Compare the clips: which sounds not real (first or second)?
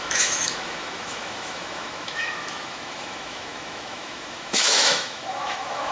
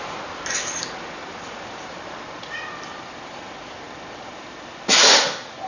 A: first